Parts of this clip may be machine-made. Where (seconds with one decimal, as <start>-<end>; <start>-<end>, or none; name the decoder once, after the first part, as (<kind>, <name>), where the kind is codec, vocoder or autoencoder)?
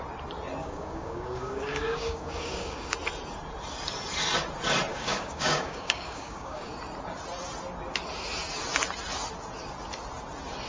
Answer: 0.6-2.9 (codec, DAC); 4.9-6.7